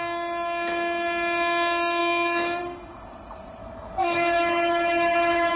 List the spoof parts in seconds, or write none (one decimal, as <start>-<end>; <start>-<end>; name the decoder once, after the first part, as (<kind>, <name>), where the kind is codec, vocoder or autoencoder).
2.0-2.6 (autoencoder, DAC-VAE); 3.6-5.6